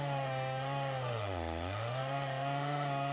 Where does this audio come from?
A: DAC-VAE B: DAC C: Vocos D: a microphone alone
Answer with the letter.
A